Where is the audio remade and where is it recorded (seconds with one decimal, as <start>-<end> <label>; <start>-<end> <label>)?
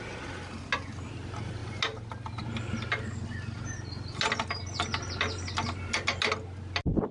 0.0-7.1 recorded